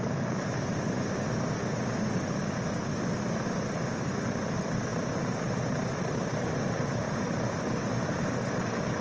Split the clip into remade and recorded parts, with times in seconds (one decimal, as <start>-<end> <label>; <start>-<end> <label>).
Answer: 0.0-9.0 recorded